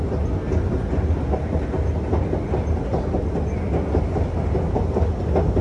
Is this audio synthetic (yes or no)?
no